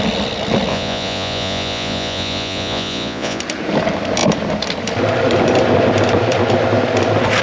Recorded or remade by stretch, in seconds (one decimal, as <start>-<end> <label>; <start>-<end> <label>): 0.0-0.7 recorded; 0.7-3.4 remade; 3.4-7.4 recorded